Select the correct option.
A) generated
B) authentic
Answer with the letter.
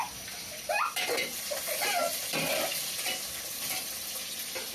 B